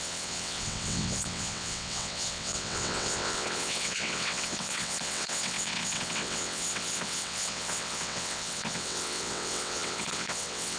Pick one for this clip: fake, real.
fake